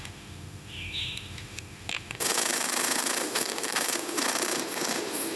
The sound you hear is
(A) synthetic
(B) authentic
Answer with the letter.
A